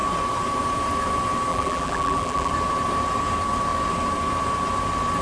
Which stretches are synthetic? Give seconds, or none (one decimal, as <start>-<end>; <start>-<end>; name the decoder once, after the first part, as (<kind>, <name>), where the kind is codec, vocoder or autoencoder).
1.5-2.5 (vocoder, BigVGAN v2)